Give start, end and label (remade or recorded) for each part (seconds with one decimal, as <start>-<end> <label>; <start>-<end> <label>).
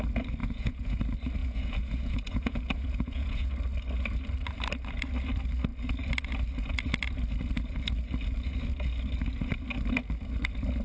0.0-0.4 recorded; 0.4-1.0 remade; 1.0-1.4 recorded; 1.4-3.5 remade; 3.5-10.8 recorded